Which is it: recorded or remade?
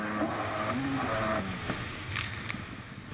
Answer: recorded